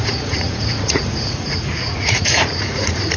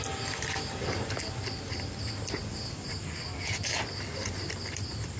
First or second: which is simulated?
first